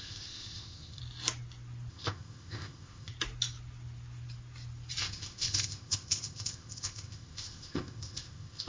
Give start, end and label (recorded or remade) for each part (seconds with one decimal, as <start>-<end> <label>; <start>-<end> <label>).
0.0-1.0 remade; 1.0-1.9 recorded; 1.9-3.1 remade; 3.1-5.0 recorded; 5.0-8.7 remade